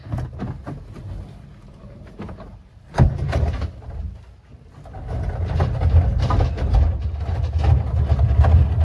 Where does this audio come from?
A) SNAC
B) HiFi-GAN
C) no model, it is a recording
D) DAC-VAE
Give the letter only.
C